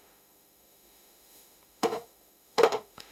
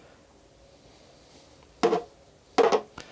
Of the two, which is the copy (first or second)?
first